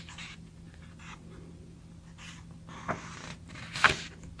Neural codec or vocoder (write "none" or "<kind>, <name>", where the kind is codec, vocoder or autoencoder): none